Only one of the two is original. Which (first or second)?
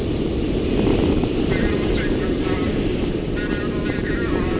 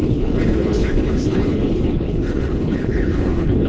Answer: first